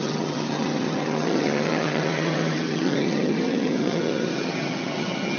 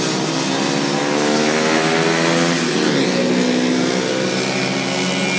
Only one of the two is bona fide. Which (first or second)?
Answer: second